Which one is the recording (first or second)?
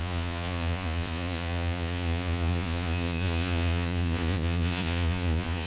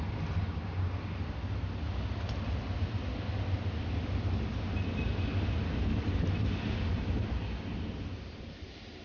second